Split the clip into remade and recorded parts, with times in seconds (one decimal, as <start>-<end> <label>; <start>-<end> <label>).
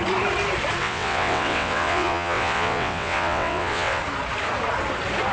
0.0-0.8 recorded; 0.8-4.0 remade; 4.0-5.3 recorded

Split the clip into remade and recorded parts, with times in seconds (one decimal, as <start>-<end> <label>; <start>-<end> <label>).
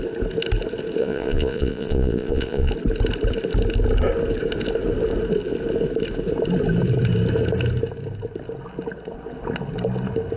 0.0-1.0 recorded; 1.0-2.7 remade; 2.7-10.4 recorded